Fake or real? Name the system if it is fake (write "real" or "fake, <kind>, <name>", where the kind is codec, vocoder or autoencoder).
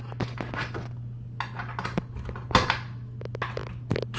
real